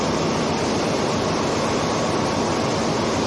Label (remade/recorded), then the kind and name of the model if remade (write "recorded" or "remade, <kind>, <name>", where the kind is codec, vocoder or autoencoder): recorded